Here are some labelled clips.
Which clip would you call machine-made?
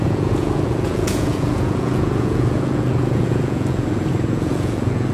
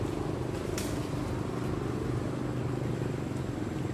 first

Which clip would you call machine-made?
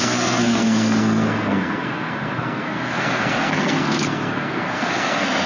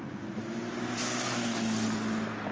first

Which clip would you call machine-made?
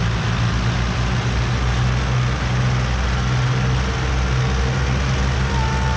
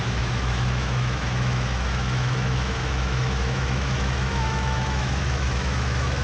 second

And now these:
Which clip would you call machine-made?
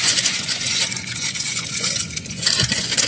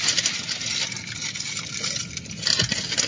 first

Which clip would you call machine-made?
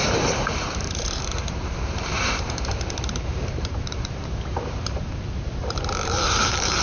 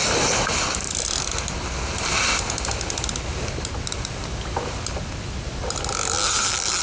first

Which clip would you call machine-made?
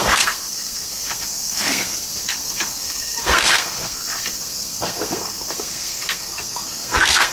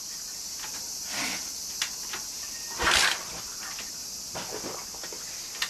first